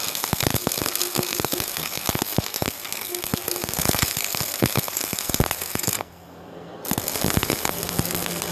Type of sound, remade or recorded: remade